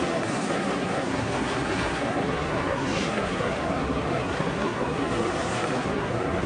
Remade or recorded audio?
remade